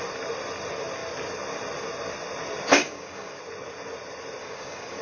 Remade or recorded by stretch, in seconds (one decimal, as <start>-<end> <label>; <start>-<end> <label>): 0.0-2.7 recorded; 2.7-3.4 remade; 3.4-4.4 recorded; 4.4-5.0 remade

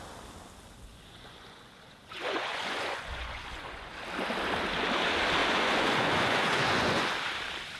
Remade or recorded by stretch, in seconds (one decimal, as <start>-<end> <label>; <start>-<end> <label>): 0.0-0.9 recorded; 0.9-3.9 remade; 3.9-5.4 recorded; 5.4-7.1 remade; 7.1-7.8 recorded

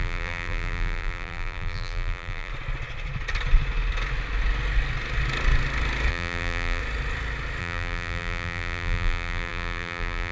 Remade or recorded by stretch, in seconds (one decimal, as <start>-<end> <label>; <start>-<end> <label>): 0.0-2.5 remade; 2.5-6.1 recorded; 6.1-6.8 remade; 6.8-7.6 recorded; 7.6-10.3 remade

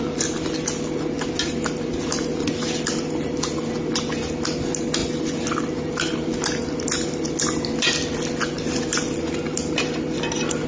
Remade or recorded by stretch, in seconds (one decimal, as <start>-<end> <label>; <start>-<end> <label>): 0.0-10.7 recorded

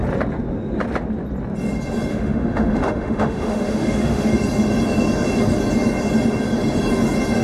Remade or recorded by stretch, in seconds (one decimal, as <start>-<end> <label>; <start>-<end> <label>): 0.0-2.1 recorded; 2.1-4.3 remade; 4.3-7.4 recorded

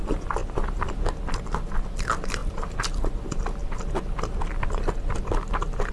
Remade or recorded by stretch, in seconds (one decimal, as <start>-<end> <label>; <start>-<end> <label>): 0.0-0.4 remade; 0.4-1.7 recorded; 1.7-3.6 remade; 3.6-5.9 recorded

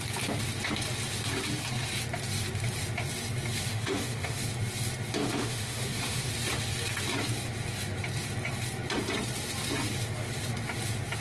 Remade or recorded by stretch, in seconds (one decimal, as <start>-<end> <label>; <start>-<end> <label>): 0.0-3.7 recorded; 3.7-4.4 remade; 4.4-5.2 recorded; 5.2-6.3 remade; 6.3-11.2 recorded

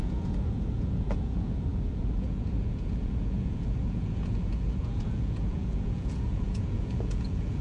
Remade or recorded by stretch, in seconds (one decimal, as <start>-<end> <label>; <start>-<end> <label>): 0.0-7.6 remade